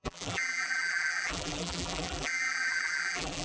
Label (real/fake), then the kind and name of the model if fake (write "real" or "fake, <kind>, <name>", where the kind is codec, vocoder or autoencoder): fake, vocoder, BigVGAN v2